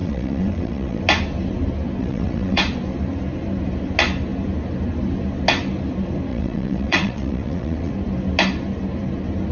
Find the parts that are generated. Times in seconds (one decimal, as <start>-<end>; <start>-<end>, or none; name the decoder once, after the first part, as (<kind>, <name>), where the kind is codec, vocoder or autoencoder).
0.0-1.0 (vocoder, WaveNeXt); 2.0-2.6; 6.3-7.9